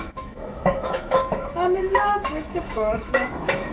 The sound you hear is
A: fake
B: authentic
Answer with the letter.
A